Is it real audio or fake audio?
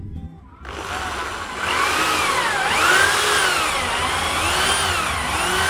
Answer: real